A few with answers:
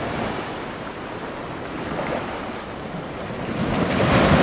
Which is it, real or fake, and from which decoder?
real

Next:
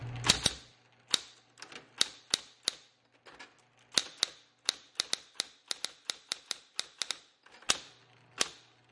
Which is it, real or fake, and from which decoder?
real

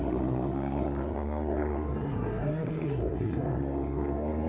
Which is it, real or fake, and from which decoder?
fake, codec, SNAC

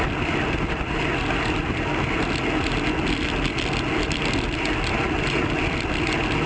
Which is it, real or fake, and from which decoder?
real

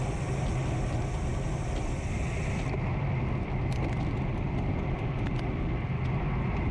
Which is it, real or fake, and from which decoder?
real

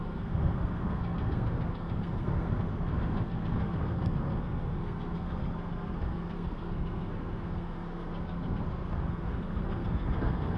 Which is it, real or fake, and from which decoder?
fake, codec, SNAC